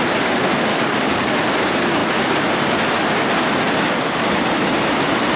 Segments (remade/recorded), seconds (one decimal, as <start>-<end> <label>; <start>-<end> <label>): 0.0-0.7 recorded; 0.7-1.3 remade; 1.3-5.4 recorded